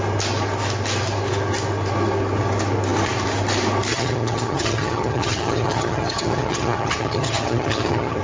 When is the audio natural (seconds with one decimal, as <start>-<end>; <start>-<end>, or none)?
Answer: 0.0-3.9